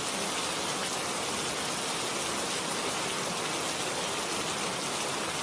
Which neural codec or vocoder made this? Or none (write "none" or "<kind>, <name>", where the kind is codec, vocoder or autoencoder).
none